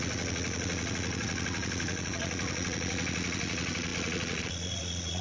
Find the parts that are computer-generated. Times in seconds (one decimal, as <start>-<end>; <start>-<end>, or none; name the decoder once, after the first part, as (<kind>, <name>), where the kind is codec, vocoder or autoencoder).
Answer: 0.0-5.2 (vocoder, Vocos)